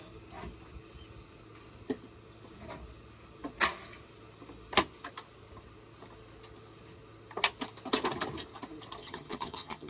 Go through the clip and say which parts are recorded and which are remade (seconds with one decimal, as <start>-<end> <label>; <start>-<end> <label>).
0.0-9.0 recorded; 9.0-9.9 remade